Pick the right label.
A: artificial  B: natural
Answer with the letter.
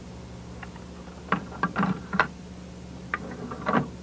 B